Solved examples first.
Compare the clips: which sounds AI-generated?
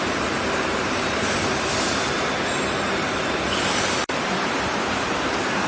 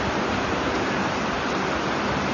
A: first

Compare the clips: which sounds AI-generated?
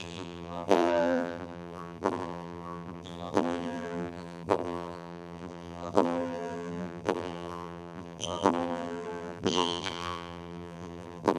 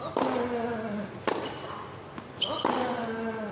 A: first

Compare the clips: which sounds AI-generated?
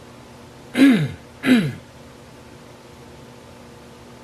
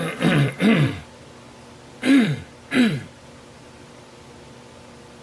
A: second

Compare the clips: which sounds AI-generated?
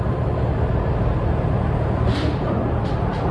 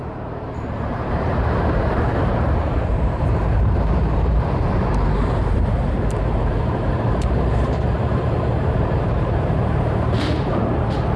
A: second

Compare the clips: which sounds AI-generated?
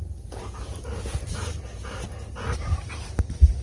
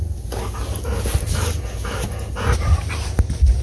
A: first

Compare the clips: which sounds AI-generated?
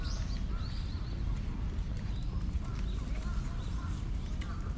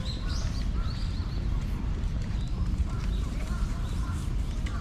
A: second